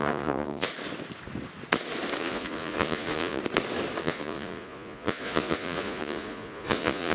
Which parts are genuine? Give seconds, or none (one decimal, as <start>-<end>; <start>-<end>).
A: 0.7-2.2; 3.4-4.0